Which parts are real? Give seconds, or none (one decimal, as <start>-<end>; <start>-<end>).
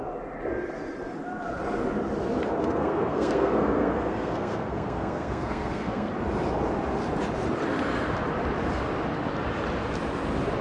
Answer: 0.0-2.6; 6.1-10.6